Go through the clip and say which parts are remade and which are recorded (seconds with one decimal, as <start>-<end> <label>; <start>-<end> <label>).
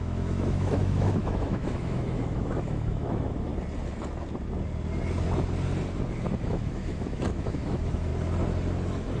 0.0-3.5 remade; 3.5-6.5 recorded; 6.5-8.1 remade; 8.1-9.2 recorded